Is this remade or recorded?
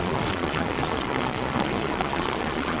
remade